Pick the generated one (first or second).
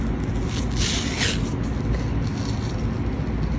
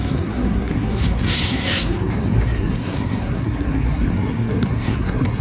second